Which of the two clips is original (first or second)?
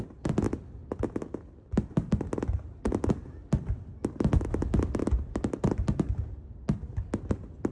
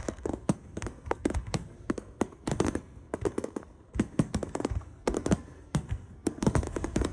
first